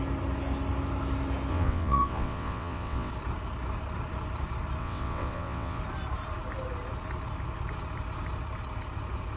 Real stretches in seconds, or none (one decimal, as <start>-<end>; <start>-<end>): 0.0-1.5; 3.1-4.8; 5.8-9.4